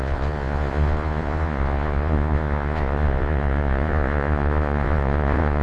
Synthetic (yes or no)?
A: yes